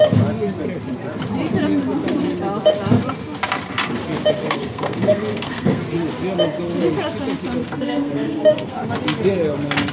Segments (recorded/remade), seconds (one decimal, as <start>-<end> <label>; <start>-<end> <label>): 0.0-4.4 recorded; 4.4-5.8 remade; 5.8-7.6 recorded; 7.6-8.9 remade; 8.9-9.9 recorded